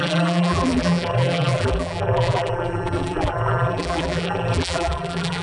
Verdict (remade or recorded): remade